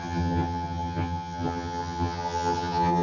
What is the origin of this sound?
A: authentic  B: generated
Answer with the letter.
B